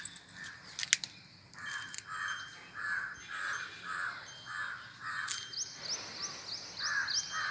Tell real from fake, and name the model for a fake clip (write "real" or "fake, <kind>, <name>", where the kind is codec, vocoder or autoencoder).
real